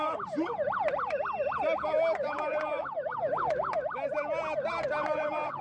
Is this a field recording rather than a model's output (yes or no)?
yes